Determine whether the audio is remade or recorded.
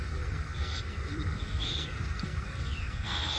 remade